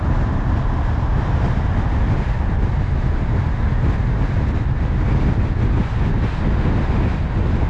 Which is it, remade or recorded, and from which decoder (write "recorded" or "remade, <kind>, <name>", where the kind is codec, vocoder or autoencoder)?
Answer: recorded